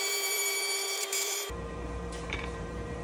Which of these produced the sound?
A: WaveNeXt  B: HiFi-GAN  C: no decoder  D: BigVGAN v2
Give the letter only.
D